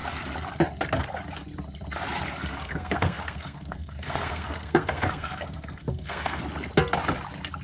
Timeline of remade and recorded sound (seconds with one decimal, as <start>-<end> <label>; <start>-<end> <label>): 0.0-2.6 recorded; 2.6-6.4 remade; 6.4-7.6 recorded